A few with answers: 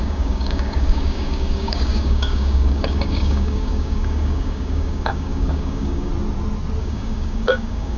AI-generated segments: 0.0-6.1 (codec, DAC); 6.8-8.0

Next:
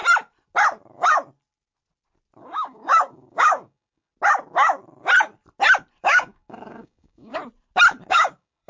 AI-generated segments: 2.4-4.1 (codec, DAC); 6.0-7.3; 8.1-8.7

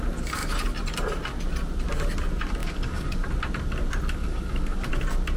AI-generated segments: 2.6-3.3 (codec, DAC); 4.2-4.9

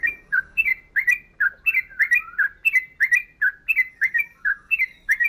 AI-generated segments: 0.0-0.7 (codec, DAC); 3.9-5.3